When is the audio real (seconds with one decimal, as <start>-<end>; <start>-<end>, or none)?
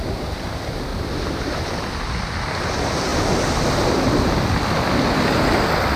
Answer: 0.0-0.9; 1.8-6.0